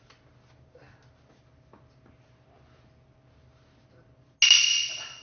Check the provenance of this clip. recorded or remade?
recorded